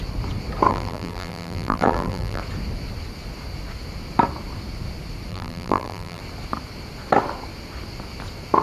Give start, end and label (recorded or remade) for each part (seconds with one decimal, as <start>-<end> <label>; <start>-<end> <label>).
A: 0.0-0.7 recorded; 0.7-2.4 remade; 2.4-5.3 recorded; 5.3-6.2 remade; 6.2-8.6 recorded